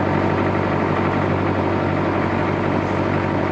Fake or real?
real